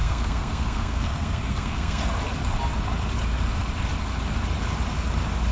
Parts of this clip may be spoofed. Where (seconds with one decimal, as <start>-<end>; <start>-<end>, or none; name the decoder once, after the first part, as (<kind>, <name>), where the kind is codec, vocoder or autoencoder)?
0.0-2.0 (codec, SNAC)